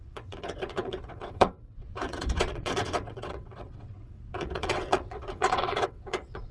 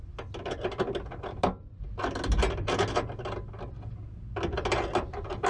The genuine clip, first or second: second